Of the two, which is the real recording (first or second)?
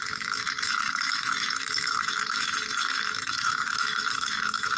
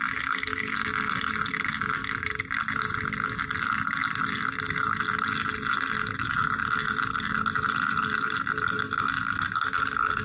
second